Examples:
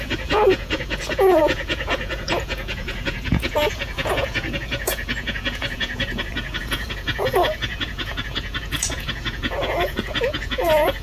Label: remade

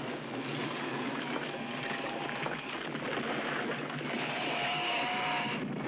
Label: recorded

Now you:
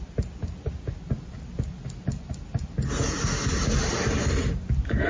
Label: recorded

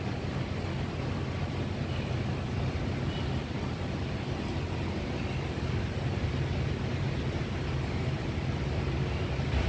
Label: recorded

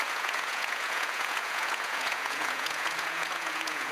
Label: remade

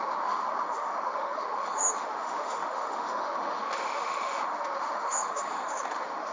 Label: remade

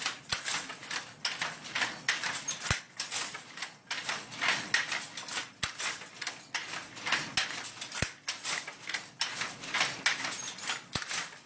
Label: recorded